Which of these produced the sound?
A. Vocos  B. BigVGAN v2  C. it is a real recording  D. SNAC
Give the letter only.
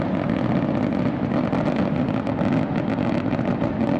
C